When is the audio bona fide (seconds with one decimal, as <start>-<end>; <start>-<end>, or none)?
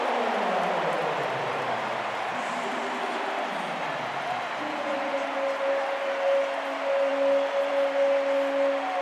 0.0-9.0